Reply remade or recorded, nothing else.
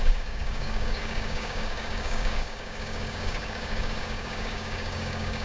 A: remade